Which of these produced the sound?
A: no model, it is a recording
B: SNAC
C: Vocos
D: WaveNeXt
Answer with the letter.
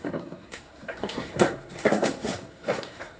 B